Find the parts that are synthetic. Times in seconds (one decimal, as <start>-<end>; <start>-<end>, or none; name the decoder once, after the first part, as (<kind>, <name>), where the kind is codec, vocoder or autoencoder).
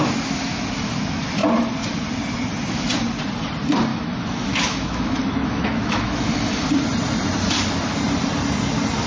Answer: 3.9-6.4 (autoencoder, DAC-VAE)